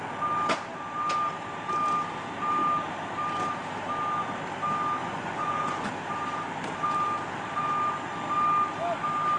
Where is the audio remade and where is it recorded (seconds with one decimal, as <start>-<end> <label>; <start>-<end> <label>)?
0.0-5.0 recorded; 5.0-5.9 remade; 5.9-9.4 recorded